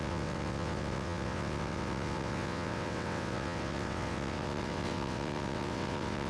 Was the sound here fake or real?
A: fake